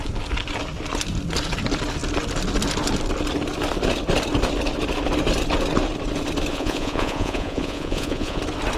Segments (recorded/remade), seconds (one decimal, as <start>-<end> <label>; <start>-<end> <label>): 0.0-6.5 recorded; 6.5-8.4 remade; 8.4-8.8 recorded